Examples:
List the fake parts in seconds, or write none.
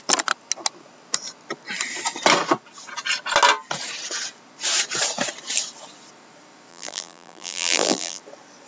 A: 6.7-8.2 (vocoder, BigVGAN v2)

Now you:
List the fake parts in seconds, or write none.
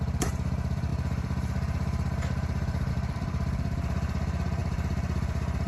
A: 0.0-5.7 (vocoder, BigVGAN v2)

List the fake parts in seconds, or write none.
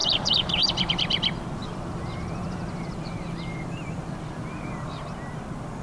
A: 0.0-0.9 (vocoder, BigVGAN v2); 1.6-5.1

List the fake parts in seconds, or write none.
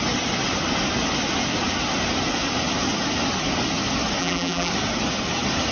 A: 4.2-4.7 (vocoder, BigVGAN v2)